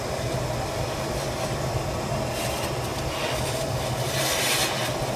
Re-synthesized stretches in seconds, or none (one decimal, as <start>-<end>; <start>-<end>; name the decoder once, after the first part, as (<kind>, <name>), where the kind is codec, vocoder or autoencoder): none